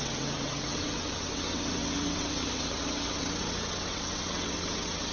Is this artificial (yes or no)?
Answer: yes